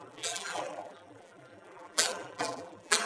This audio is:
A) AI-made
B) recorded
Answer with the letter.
A